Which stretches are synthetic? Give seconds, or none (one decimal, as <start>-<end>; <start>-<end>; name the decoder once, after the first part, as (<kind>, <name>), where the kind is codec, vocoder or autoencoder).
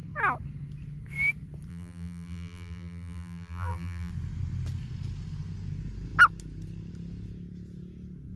1.7-4.1 (vocoder, BigVGAN v2)